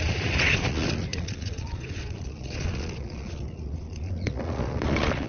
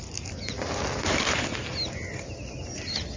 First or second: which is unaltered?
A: second